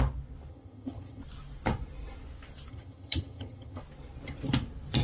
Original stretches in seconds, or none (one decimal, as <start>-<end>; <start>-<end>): 0.0-0.5; 1.2-2.7; 3.8-5.0